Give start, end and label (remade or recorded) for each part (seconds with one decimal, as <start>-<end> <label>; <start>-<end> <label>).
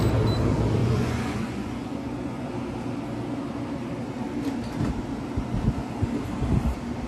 0.0-0.8 recorded; 0.8-2.5 remade; 2.5-7.1 recorded